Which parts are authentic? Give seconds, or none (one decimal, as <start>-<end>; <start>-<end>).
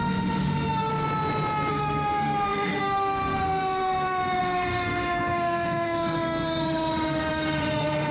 0.9-1.7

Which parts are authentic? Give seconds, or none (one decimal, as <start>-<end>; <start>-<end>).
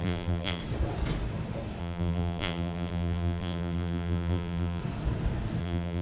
0.6-1.8; 4.8-5.6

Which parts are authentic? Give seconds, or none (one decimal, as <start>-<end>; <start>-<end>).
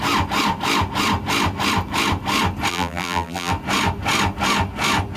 0.0-2.7; 3.5-5.2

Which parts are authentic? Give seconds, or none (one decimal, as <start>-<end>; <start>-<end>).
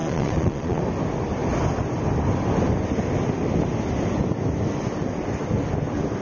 0.8-6.2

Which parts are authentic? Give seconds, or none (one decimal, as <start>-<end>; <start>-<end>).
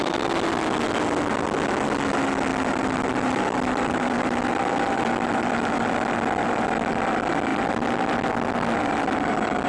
0.0-2.5; 6.6-9.7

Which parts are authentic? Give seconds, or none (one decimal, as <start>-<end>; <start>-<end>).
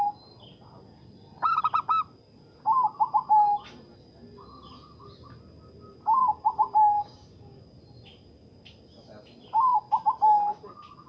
0.0-6.2; 7.6-11.1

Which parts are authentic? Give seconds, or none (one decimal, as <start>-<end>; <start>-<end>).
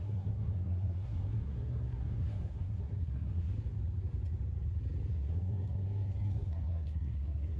3.5-5.1